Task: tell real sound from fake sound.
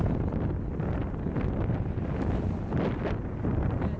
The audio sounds real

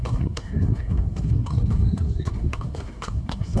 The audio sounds fake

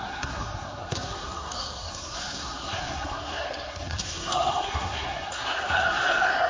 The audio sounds fake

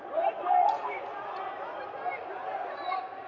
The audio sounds real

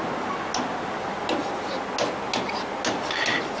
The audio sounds real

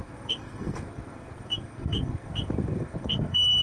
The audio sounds fake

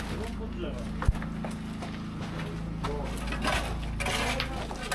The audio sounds real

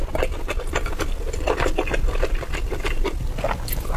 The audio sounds real